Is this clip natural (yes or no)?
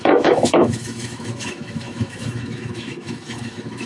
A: no